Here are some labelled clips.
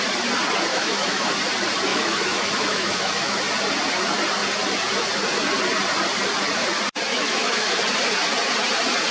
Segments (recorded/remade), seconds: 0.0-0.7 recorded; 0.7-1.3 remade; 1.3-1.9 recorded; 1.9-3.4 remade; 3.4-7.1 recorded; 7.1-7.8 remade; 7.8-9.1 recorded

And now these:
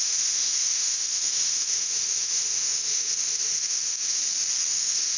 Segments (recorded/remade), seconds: 0.0-4.2 remade; 4.2-4.7 recorded; 4.7-5.2 remade

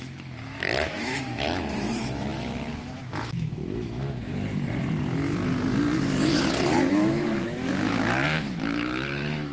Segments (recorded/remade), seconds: 0.0-4.3 remade; 4.3-6.9 recorded; 6.9-9.5 remade

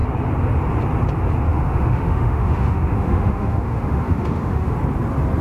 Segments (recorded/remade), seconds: 0.0-1.5 recorded; 1.5-4.7 remade; 4.7-5.4 recorded

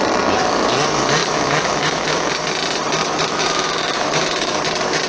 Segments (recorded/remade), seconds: 0.0-1.2 recorded; 1.2-2.3 remade; 2.3-3.0 recorded; 3.0-4.6 remade; 4.6-5.1 recorded

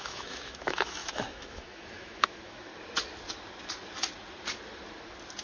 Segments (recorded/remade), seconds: 0.0-2.7 remade; 2.7-5.4 recorded